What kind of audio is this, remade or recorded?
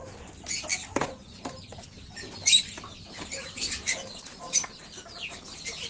recorded